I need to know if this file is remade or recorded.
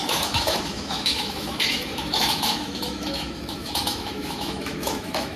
remade